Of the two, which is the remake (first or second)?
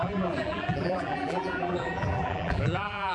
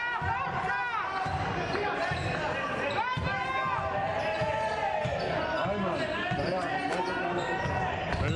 first